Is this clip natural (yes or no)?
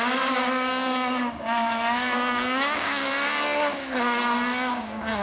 no